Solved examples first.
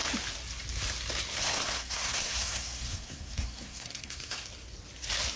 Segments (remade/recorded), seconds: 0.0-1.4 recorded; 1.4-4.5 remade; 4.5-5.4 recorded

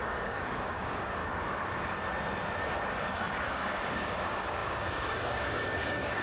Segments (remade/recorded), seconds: 0.0-1.2 remade; 1.2-2.9 recorded; 2.9-6.2 remade